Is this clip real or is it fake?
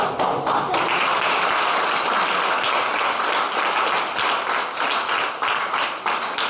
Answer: real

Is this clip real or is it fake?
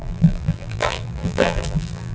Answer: fake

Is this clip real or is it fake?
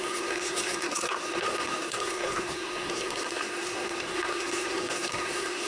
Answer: fake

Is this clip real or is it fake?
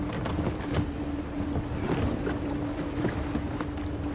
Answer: real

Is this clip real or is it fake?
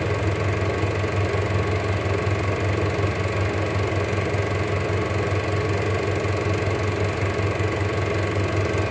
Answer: real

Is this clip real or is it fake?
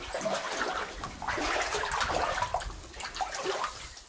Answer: real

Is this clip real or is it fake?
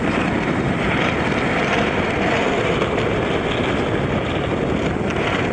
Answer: fake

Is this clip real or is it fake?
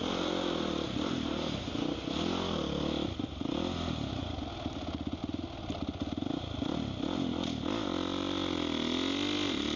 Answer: real